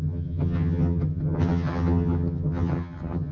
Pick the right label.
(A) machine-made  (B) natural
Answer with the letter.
A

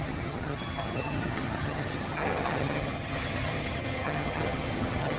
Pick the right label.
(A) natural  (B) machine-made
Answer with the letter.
B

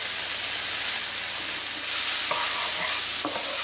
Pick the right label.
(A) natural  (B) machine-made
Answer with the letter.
A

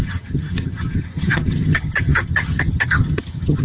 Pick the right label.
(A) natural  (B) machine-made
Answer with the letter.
B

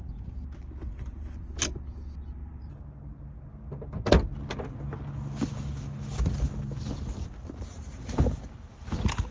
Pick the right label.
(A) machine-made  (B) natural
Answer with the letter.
B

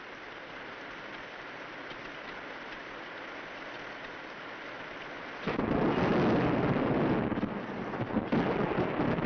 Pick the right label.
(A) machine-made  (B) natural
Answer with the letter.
B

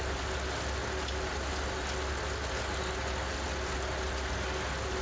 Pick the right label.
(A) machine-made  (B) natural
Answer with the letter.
B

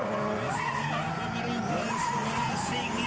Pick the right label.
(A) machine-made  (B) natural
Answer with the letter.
B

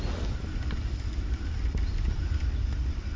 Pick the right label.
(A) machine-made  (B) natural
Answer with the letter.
B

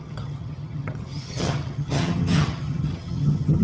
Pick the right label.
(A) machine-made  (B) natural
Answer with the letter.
A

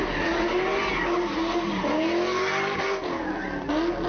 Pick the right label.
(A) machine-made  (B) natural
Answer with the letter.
B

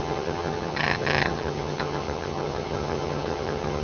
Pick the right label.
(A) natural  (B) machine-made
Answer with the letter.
B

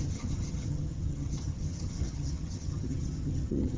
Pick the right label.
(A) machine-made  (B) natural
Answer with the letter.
A